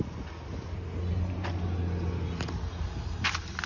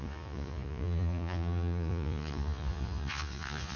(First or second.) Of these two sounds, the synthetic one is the second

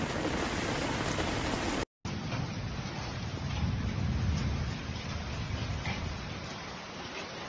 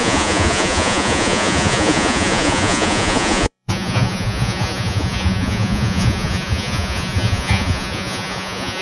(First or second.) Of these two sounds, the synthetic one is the second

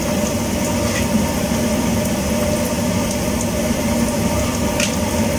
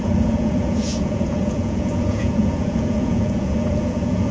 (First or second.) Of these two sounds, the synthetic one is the second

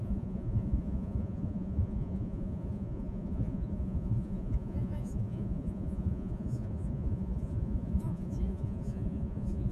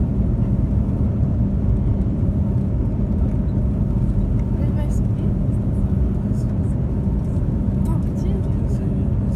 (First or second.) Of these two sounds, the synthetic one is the first